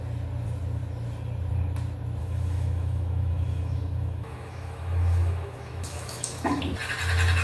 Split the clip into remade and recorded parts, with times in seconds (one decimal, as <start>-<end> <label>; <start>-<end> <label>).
0.0-2.2 recorded; 2.2-6.6 remade; 6.6-7.4 recorded